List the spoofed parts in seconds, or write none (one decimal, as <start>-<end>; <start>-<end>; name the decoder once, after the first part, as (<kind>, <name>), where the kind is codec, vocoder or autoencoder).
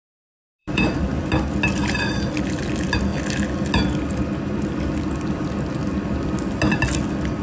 0.6-1.3 (vocoder, BigVGAN v2)